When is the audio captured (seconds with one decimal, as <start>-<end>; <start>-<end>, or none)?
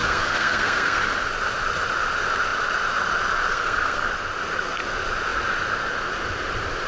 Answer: 1.0-3.5; 4.1-6.9